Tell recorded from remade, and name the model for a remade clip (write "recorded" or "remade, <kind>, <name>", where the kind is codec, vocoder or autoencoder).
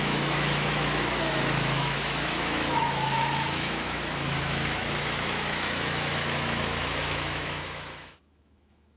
remade, autoencoder, DAC-VAE